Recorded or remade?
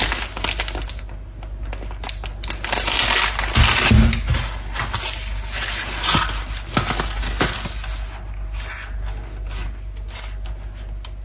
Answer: recorded